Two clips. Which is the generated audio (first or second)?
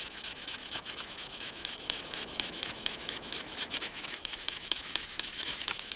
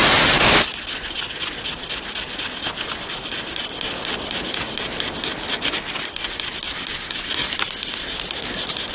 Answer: first